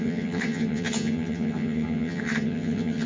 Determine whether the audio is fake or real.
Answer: fake